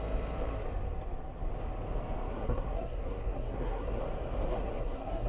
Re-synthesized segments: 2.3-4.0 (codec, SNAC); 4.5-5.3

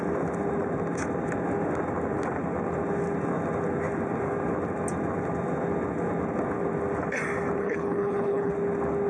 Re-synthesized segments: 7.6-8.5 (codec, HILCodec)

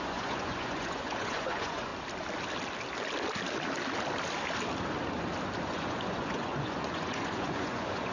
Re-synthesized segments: 0.0-1.9 (vocoder, Vocos); 5.6-8.1

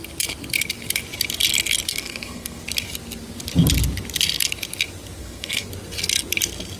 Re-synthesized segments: 1.9-2.6 (codec, SNAC); 5.2-5.7